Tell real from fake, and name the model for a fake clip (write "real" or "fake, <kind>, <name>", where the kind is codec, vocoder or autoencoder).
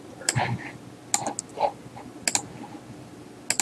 real